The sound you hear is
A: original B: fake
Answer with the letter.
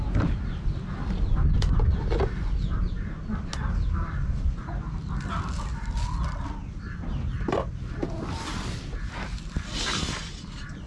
A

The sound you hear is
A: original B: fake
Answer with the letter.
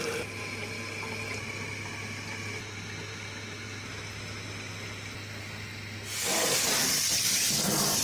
A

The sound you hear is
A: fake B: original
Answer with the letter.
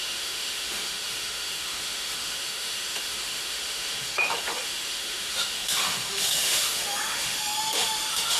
A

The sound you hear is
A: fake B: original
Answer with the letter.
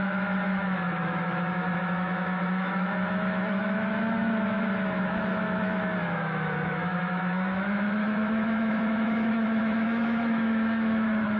A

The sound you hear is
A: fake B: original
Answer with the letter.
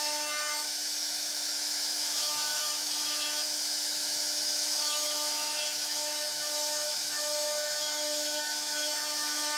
A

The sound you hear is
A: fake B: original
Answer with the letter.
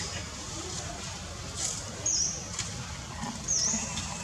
B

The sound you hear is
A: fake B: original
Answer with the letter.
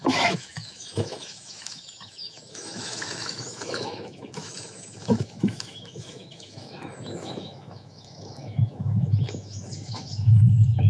A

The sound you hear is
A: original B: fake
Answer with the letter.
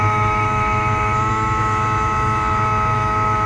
B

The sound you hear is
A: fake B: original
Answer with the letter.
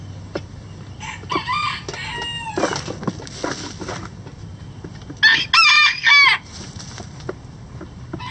B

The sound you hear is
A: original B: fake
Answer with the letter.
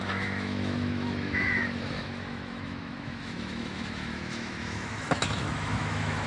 B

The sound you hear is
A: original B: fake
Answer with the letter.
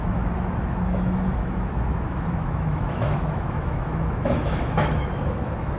B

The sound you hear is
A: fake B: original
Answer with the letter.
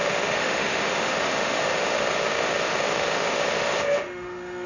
A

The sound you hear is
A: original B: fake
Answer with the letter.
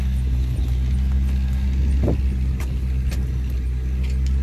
A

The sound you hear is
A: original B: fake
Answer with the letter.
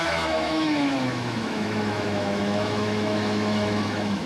B